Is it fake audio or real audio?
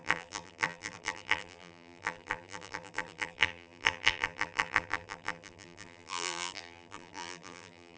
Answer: fake